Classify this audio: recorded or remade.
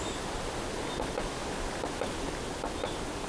recorded